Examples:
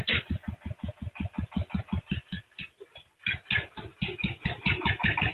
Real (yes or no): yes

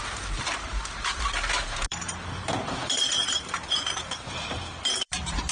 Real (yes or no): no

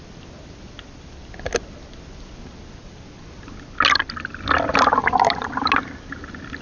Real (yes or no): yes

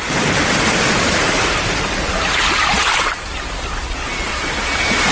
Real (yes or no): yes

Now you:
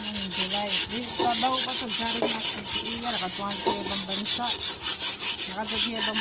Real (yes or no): yes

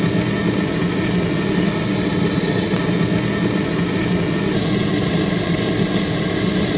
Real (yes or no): yes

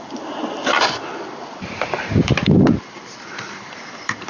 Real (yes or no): no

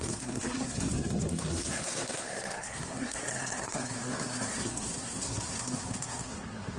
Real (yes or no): no